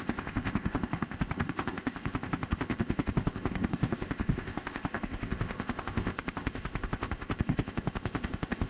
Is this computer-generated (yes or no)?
yes